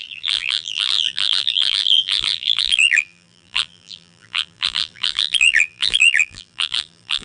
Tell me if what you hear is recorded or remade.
remade